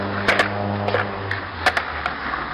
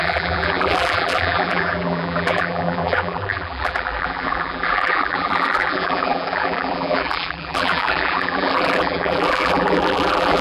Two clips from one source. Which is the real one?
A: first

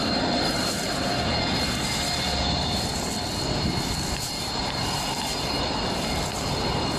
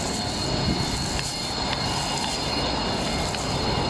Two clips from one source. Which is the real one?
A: second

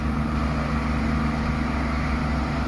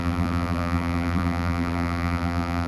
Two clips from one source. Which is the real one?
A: first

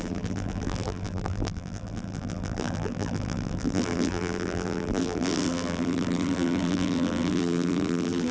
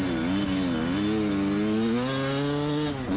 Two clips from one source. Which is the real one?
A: second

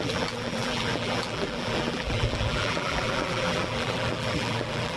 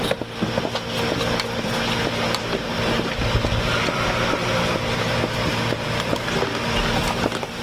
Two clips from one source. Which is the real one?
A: second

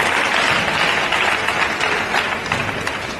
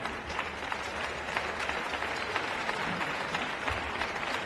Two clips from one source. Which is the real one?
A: first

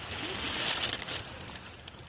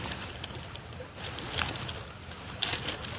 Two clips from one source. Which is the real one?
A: first